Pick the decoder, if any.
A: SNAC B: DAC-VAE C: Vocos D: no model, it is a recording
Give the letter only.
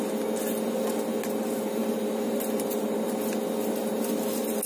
D